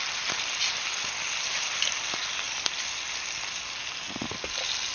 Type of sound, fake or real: real